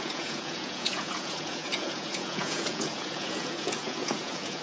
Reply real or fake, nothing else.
fake